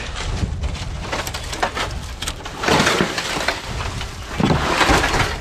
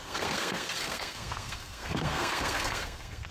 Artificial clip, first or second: second